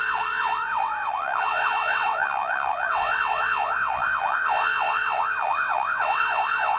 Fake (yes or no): yes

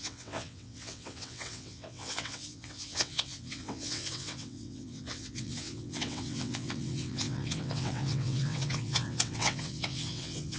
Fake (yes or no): yes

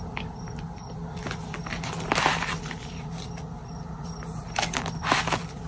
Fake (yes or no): no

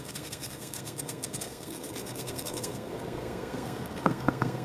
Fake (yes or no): yes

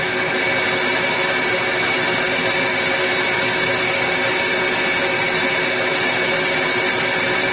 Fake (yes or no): no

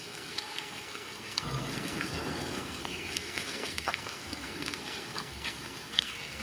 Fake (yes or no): yes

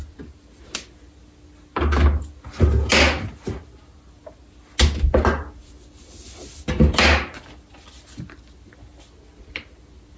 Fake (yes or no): no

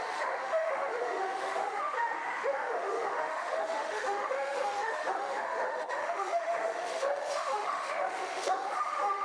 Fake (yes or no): yes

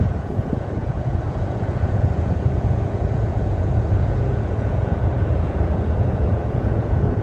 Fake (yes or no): yes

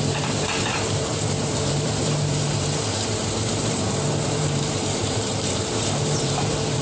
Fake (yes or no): yes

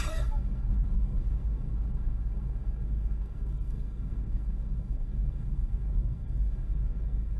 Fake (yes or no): yes